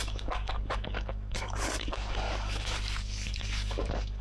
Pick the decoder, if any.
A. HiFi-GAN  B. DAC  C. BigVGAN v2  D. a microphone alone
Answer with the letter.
B